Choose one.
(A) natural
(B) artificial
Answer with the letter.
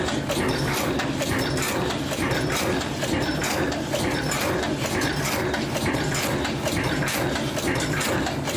A